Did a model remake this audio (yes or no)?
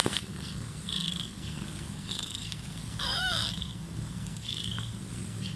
yes